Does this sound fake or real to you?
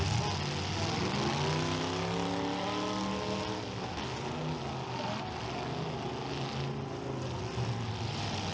real